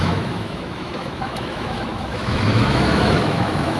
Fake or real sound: fake